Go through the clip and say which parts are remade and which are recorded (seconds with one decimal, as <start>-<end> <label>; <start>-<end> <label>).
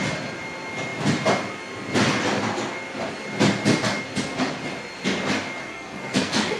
0.0-5.6 recorded; 5.6-6.6 remade